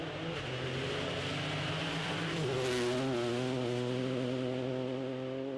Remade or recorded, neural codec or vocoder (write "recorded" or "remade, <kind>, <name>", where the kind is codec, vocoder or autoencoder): recorded